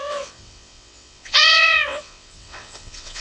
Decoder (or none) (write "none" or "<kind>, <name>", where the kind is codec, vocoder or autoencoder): vocoder, WaveNeXt